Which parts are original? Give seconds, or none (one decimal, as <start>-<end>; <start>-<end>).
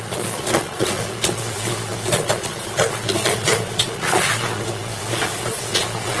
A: none